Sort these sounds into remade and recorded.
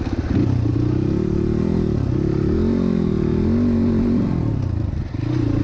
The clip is recorded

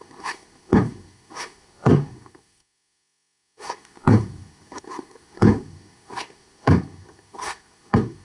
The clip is remade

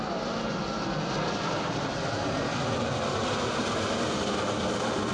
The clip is recorded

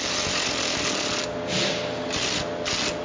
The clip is recorded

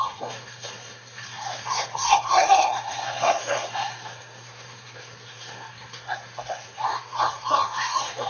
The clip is remade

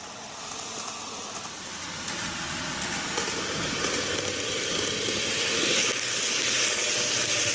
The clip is recorded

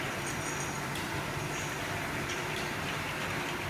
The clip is recorded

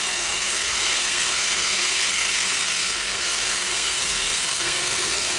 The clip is remade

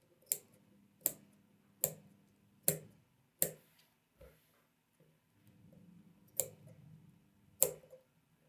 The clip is recorded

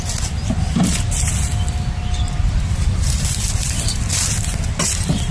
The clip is recorded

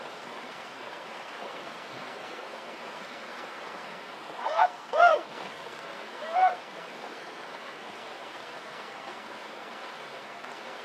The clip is remade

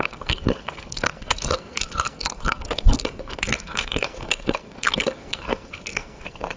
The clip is remade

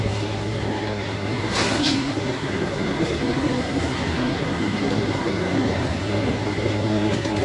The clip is remade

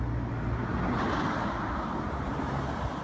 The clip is recorded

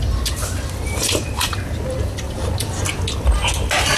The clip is recorded